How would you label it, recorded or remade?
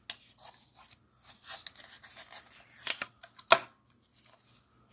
recorded